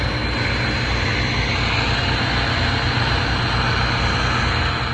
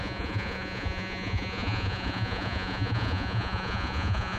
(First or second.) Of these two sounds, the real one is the first